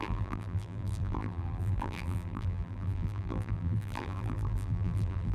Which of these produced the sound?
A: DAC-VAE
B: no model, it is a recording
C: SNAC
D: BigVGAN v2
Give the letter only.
D